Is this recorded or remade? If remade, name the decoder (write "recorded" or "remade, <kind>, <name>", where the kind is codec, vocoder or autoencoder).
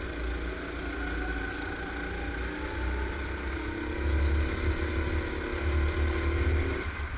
recorded